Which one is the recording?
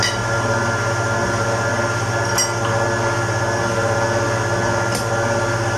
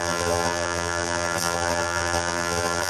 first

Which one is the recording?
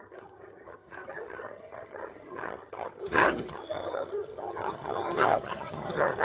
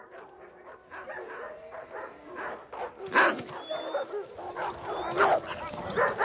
second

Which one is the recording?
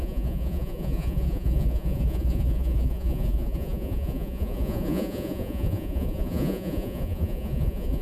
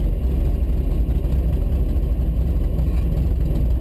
second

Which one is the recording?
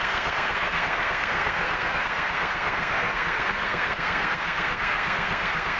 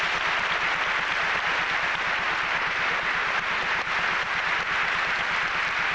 second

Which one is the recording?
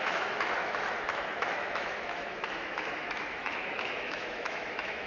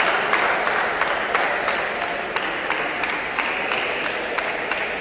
second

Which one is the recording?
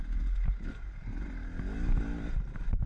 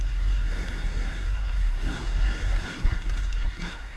first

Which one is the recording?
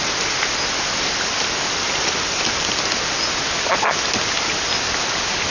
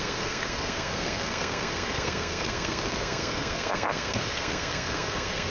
first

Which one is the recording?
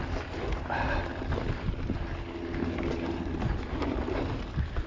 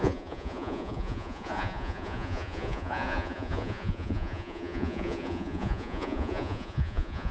first